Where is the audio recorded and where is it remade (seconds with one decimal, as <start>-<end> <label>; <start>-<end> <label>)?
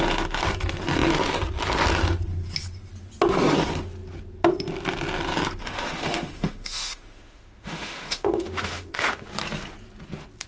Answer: 0.0-5.6 recorded; 5.6-9.3 remade; 9.3-10.5 recorded